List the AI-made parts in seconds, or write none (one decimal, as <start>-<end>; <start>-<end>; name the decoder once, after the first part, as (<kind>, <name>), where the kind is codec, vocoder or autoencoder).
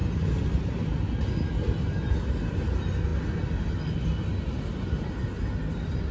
none